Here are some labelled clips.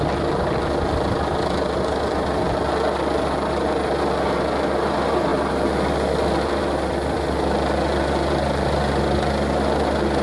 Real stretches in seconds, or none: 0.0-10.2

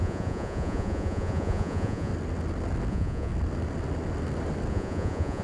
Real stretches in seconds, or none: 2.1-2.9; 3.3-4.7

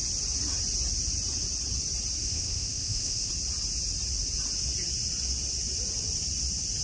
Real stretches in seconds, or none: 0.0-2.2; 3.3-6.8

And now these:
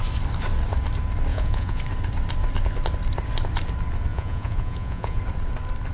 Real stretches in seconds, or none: 0.0-1.3; 1.8-4.1; 5.2-5.9

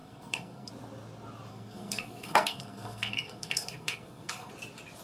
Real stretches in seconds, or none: 0.7-1.5; 4.5-5.0

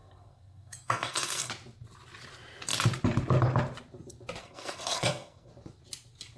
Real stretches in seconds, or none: 1.5-4.4; 5.5-6.4